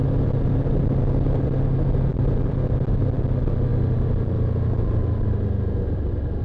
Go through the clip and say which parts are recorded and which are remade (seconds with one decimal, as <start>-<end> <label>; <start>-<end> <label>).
0.0-6.4 recorded